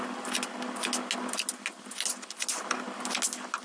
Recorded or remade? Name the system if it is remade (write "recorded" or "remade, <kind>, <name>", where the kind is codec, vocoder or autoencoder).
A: recorded